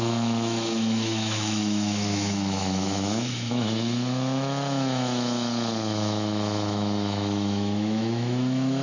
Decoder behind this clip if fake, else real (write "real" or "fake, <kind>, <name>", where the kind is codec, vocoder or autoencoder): fake, autoencoder, DAC-VAE